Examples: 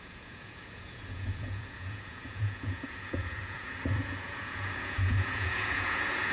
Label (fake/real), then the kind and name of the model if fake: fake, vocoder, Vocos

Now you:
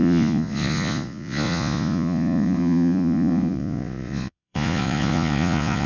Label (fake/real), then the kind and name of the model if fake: fake, vocoder, Vocos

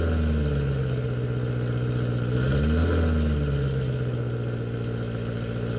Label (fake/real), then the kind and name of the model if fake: real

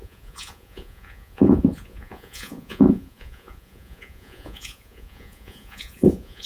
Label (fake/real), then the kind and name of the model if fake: fake, vocoder, Vocos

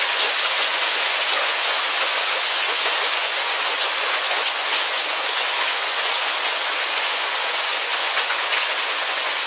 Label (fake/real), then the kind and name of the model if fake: fake, vocoder, Vocos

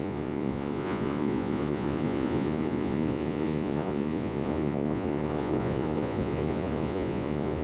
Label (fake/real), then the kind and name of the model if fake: fake, vocoder, Vocos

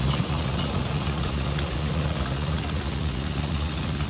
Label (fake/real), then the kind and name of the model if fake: fake, vocoder, Vocos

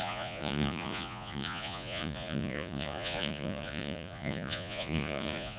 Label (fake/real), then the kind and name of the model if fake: fake, vocoder, Vocos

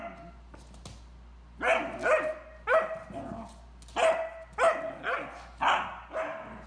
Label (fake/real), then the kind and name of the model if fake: real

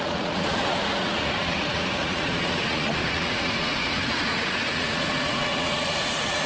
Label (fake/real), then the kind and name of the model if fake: fake, vocoder, Vocos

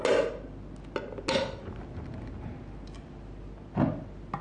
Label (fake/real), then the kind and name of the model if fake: real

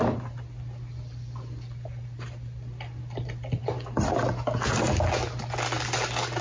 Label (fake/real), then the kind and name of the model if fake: real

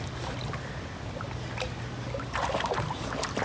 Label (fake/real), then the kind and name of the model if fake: real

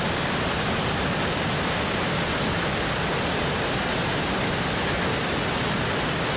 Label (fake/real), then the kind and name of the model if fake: real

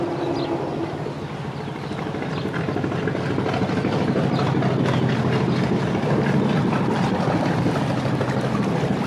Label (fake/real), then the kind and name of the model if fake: real